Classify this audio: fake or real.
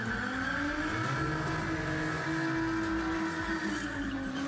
real